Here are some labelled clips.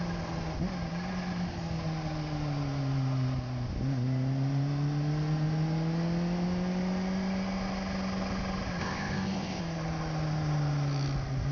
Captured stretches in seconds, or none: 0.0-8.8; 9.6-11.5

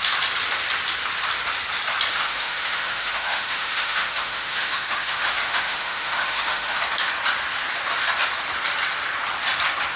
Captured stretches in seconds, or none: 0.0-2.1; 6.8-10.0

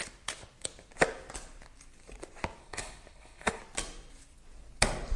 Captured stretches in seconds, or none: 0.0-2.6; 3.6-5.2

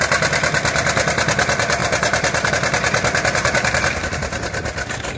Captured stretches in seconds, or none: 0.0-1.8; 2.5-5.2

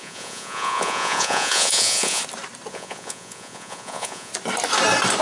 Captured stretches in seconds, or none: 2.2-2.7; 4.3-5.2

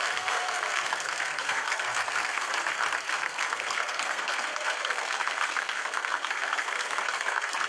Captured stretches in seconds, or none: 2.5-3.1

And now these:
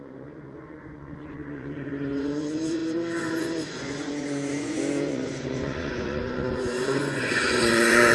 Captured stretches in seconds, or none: none